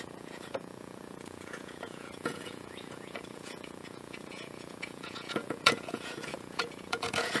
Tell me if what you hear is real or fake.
fake